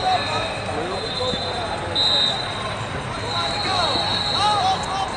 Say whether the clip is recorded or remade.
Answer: recorded